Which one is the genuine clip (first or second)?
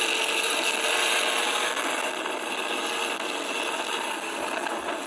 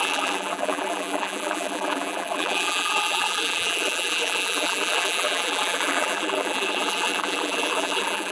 first